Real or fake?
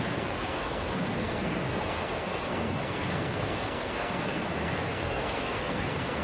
fake